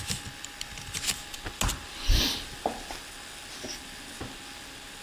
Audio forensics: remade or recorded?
recorded